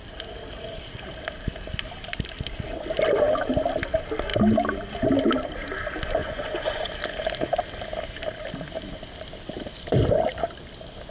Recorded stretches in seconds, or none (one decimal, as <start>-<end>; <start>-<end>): 0.0-6.2; 6.9-11.1